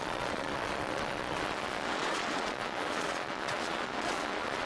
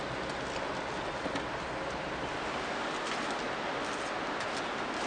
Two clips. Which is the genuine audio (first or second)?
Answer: second